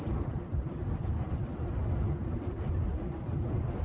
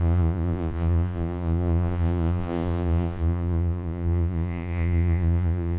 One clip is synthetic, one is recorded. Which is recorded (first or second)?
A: first